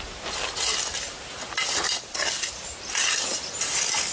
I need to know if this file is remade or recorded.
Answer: recorded